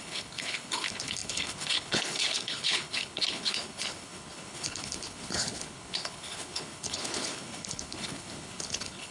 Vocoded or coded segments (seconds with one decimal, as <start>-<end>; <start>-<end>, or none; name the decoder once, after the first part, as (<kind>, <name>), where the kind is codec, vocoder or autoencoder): 0.0-9.1 (codec, HILCodec)